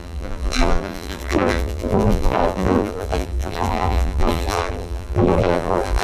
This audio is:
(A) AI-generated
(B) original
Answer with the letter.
A